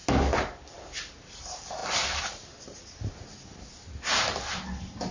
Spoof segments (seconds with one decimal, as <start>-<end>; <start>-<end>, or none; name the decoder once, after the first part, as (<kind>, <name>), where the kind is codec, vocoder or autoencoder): none